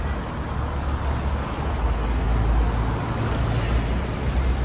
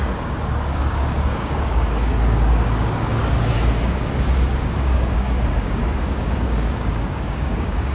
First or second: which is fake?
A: second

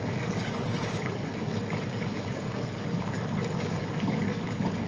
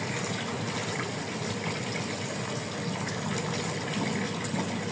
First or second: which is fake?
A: first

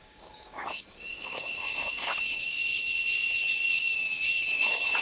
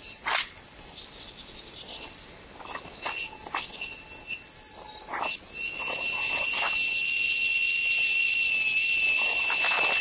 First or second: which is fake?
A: first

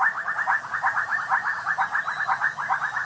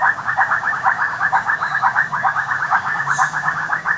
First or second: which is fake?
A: second